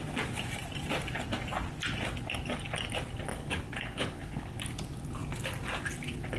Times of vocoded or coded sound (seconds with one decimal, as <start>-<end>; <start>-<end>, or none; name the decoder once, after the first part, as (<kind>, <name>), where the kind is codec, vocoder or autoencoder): 3.3-4.6 (codec, HILCodec)